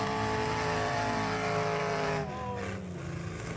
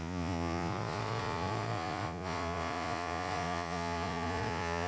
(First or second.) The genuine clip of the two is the first